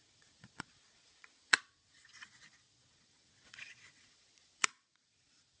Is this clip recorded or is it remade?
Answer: remade